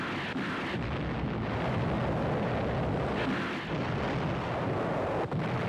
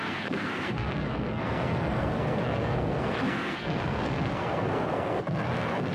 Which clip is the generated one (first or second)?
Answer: second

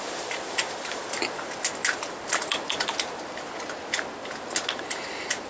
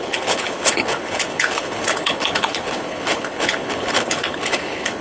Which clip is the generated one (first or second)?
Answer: second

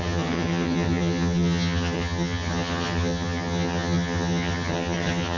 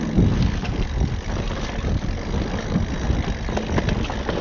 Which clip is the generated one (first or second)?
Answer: first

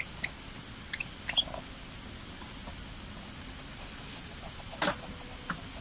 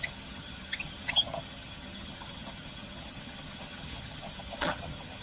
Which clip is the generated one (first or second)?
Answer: second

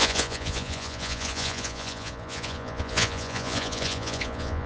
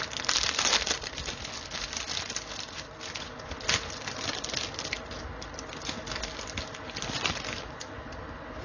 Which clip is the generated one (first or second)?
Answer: first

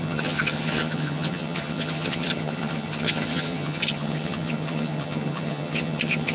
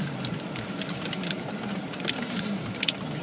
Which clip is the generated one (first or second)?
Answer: first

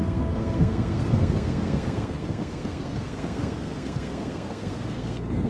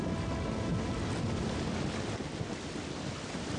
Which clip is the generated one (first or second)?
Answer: first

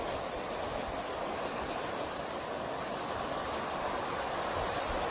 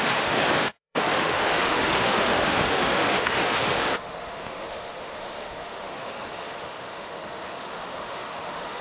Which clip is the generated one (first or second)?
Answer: second